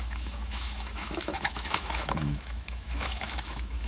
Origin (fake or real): fake